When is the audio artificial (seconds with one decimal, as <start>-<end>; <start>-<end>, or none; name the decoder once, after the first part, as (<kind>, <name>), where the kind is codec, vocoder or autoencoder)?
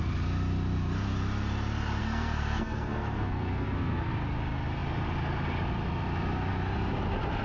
2.0-4.1 (codec, SNAC)